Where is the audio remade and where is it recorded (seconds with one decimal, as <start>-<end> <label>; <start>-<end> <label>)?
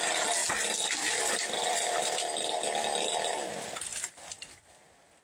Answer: 0.0-5.2 recorded